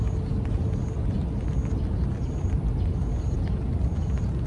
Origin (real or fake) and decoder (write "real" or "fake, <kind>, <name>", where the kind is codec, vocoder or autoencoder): real